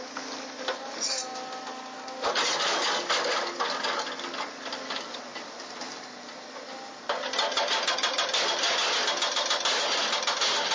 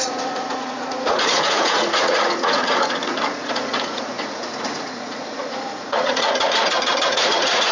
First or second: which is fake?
second